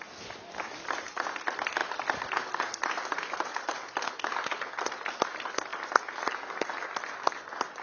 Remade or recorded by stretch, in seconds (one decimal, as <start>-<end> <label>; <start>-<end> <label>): 0.0-7.8 recorded